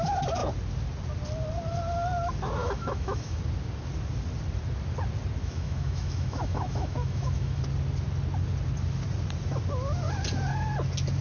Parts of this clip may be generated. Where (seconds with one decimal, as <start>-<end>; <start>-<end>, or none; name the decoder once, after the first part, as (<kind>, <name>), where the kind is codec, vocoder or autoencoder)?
2.6-3.4 (autoencoder, DAC-VAE); 5.4-7.6